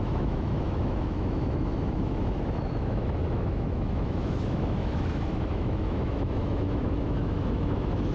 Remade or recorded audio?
remade